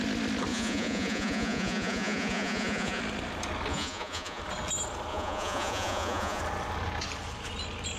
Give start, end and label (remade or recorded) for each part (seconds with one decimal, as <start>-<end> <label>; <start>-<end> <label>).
0.0-0.5 recorded; 0.5-3.0 remade; 3.0-3.7 recorded; 3.7-4.4 remade; 4.4-5.1 recorded; 5.1-6.4 remade; 6.4-8.0 recorded